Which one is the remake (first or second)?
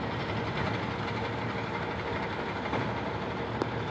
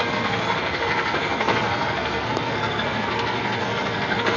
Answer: second